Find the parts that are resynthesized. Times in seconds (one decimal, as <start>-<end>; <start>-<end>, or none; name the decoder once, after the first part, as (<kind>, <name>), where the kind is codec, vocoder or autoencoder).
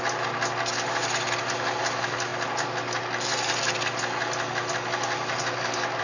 none